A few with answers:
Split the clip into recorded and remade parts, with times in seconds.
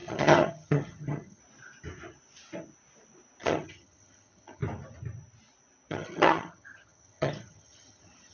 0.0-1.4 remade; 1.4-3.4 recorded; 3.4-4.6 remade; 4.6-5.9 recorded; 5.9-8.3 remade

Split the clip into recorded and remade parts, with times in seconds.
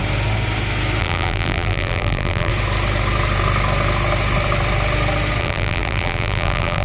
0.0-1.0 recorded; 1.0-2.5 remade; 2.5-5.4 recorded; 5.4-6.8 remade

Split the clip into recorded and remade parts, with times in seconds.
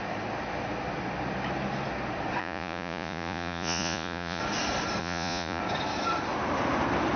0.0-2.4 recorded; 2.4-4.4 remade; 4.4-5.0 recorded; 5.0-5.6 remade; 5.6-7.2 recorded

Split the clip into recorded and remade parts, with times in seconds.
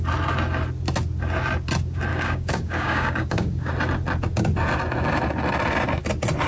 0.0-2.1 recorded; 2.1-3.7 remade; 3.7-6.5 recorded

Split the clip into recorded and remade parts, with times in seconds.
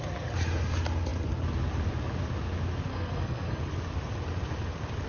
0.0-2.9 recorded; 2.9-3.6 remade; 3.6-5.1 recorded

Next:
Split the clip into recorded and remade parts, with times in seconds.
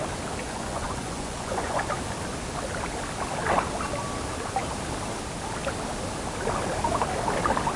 0.0-0.4 recorded; 0.4-1.8 remade; 1.8-7.8 recorded